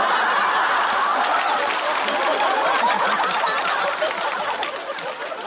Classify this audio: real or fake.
real